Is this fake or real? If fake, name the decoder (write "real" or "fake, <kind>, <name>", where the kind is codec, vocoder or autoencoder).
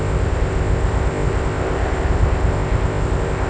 fake, codec, ZipCodec